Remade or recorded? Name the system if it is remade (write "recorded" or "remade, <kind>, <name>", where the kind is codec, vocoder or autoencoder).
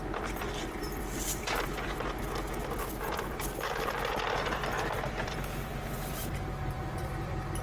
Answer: remade, vocoder, BigVGAN v2